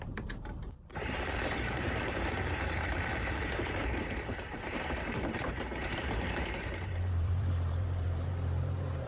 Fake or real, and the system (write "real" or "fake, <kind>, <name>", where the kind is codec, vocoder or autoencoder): fake, vocoder, BigVGAN v2